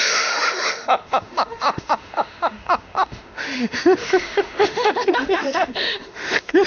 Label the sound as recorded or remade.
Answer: remade